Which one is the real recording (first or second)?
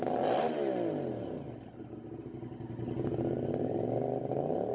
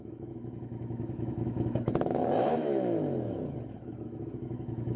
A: first